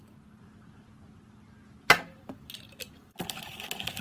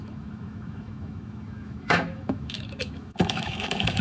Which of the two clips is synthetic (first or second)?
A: second